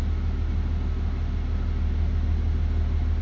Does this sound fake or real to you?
real